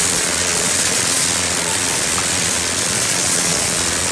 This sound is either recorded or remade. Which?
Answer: remade